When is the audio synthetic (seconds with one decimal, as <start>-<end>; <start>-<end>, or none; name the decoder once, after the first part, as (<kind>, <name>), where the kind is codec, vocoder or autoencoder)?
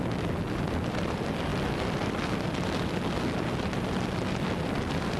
none